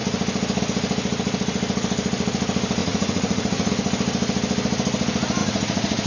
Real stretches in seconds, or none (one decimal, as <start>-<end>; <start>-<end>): 0.0-2.8; 3.7-5.4